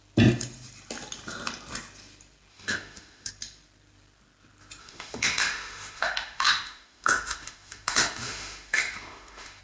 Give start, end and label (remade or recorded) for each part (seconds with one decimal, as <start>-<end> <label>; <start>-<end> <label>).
0.0-2.5 recorded; 2.5-3.3 remade; 3.3-4.8 recorded; 4.8-9.6 remade